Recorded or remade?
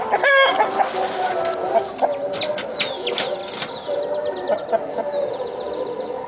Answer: recorded